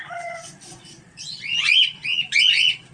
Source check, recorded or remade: remade